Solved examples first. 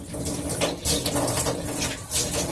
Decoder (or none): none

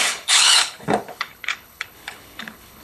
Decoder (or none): codec, HILCodec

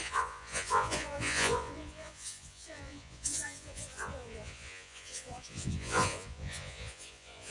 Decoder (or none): vocoder, Vocos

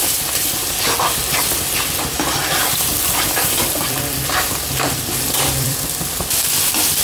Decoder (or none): vocoder, BigVGAN v2